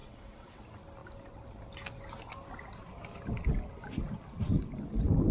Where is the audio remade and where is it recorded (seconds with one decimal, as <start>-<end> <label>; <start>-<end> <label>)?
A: 0.0-0.6 remade; 0.6-5.3 recorded